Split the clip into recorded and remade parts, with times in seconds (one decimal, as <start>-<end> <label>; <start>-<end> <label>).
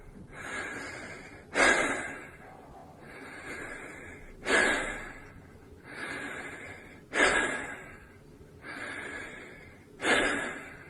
0.0-10.9 recorded